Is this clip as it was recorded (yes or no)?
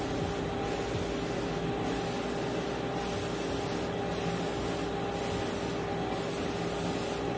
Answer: yes